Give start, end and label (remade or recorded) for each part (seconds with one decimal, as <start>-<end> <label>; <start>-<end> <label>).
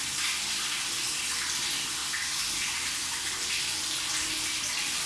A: 0.0-5.1 recorded